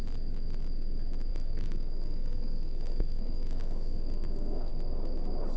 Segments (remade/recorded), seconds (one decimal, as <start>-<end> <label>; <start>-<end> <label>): 0.0-1.3 recorded; 1.3-4.7 remade; 4.7-5.6 recorded